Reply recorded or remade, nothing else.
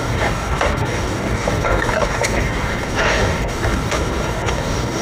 remade